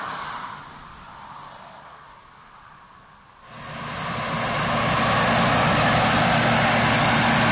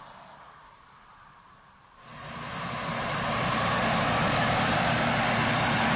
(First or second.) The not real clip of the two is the second